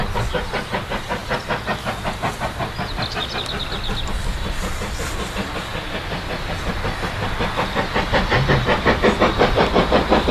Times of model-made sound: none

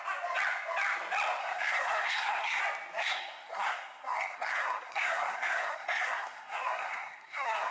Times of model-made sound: 1.4-2.6; 3.0-7.7

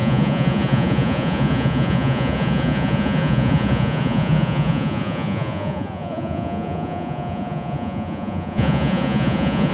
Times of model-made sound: 0.0-9.7

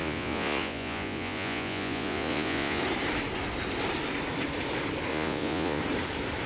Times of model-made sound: 0.0-2.8; 5.1-5.8

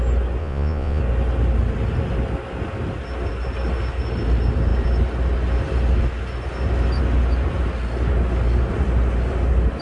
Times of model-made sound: 0.4-1.0

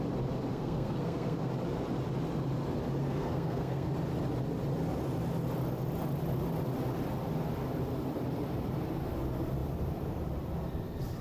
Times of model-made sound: 0.5-1.5; 3.0-3.9

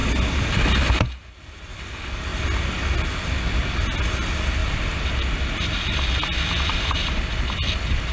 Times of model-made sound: none